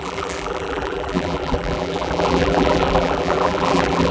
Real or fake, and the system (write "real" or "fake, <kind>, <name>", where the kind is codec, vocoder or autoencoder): fake, vocoder, BigVGAN v2